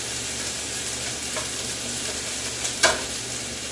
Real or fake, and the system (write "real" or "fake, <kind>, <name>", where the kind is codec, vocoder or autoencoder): fake, vocoder, BigVGAN v2